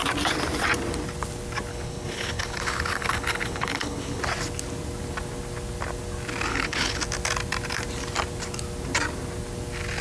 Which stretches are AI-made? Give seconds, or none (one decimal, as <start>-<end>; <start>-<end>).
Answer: 1.7-4.2; 6.5-7.0